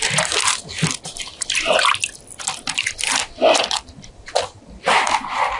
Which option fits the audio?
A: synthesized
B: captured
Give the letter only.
B